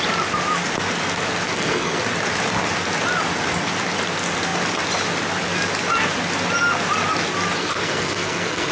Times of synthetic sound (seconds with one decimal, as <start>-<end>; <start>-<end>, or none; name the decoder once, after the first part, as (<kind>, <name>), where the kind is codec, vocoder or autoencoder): 1.5-2.0 (codec, SNAC); 7.6-8.7